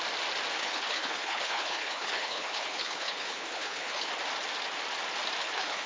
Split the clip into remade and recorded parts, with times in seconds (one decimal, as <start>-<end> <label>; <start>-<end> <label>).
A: 0.0-0.6 recorded; 0.6-4.1 remade; 4.1-5.4 recorded; 5.4-5.9 remade

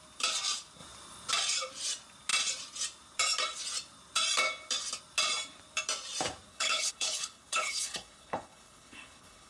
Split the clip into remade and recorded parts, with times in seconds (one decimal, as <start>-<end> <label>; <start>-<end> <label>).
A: 0.0-6.5 recorded; 6.5-9.5 remade

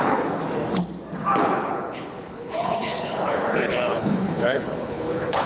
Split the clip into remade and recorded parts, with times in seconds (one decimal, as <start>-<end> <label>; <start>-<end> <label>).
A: 0.0-0.4 remade; 0.4-1.4 recorded; 1.4-5.5 remade

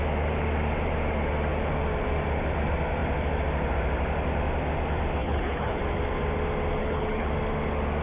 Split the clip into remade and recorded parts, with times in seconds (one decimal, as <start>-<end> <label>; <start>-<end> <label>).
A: 0.0-5.2 recorded; 5.2-5.8 remade; 5.8-6.8 recorded; 6.8-7.3 remade; 7.3-8.0 recorded

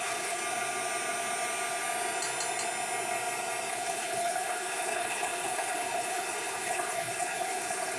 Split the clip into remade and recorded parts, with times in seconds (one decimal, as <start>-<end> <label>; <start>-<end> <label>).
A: 0.0-0.4 remade; 0.4-3.7 recorded; 3.7-8.0 remade

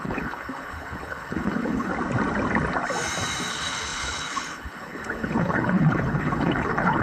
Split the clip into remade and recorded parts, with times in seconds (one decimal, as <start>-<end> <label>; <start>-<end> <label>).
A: 0.0-1.9 remade; 1.9-3.5 recorded; 3.5-7.0 remade

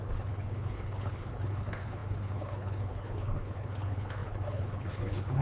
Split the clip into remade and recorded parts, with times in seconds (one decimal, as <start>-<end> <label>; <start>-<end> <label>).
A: 0.0-5.4 remade

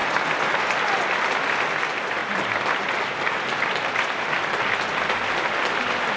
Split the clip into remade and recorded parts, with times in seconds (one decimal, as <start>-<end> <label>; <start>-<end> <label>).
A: 0.0-6.2 recorded